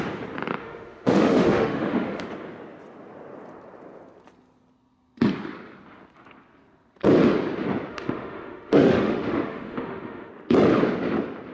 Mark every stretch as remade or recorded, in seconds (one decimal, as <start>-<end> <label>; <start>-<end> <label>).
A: 0.0-0.6 recorded; 0.6-2.2 remade; 2.2-7.9 recorded; 7.9-10.3 remade; 10.3-11.5 recorded